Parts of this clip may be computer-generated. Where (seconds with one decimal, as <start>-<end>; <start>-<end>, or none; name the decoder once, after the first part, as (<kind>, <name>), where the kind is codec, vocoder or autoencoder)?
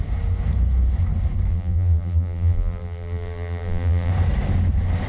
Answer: 1.5-4.1 (vocoder, BigVGAN v2)